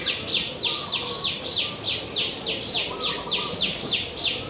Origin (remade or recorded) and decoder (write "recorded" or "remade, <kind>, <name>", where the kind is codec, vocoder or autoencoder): recorded